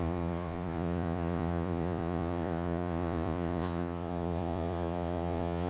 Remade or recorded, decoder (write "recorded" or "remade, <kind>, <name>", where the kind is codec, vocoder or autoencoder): remade, vocoder, Vocos